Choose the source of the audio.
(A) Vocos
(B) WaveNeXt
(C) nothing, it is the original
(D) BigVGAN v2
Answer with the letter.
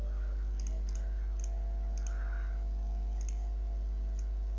C